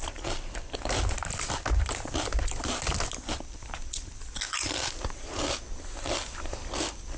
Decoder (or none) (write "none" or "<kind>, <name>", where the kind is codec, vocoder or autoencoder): none